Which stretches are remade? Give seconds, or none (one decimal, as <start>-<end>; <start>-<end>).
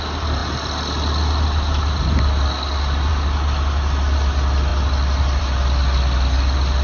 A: none